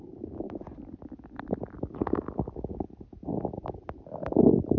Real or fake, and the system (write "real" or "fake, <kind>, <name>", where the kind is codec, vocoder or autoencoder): real